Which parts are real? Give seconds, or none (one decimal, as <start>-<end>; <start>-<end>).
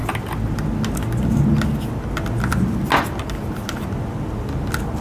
0.0-5.0